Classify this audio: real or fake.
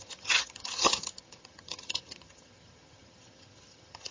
fake